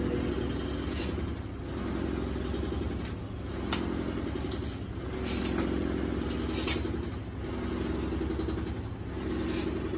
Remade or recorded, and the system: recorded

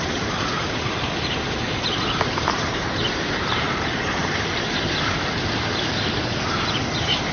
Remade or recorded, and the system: remade, vocoder, BigVGAN v2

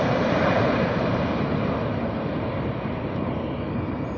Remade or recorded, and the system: remade, vocoder, BigVGAN v2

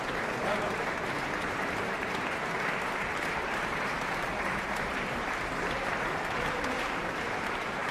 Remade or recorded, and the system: remade, vocoder, BigVGAN v2